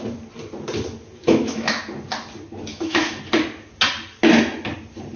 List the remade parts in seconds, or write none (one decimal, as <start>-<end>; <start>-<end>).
1.2-1.8; 2.7-3.2